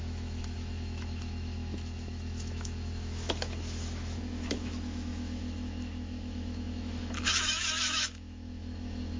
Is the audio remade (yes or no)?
yes